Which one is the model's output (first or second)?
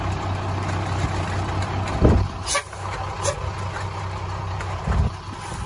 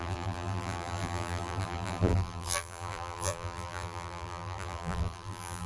second